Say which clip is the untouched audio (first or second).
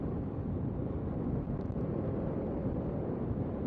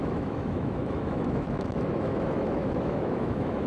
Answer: first